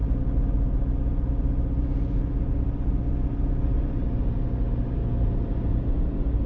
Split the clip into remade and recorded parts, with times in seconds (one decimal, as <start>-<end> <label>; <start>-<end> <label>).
0.0-6.5 recorded